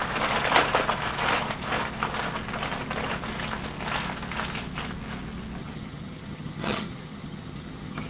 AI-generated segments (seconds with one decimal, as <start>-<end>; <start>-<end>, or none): 5.6-8.1